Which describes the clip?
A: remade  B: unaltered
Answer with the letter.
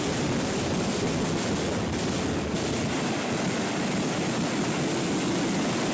B